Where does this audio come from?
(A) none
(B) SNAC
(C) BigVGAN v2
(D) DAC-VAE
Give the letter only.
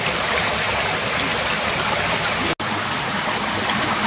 A